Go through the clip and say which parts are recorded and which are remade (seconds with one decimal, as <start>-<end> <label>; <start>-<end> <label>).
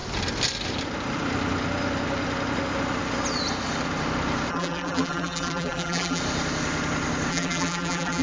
0.0-4.5 recorded; 4.5-6.2 remade; 6.2-7.3 recorded; 7.3-8.2 remade